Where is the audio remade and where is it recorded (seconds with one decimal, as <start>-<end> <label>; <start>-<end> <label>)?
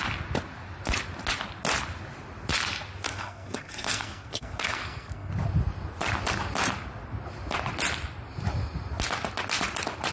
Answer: 0.0-3.1 recorded; 3.1-5.3 remade; 5.3-10.1 recorded